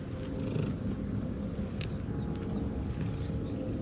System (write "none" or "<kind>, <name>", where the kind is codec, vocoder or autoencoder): none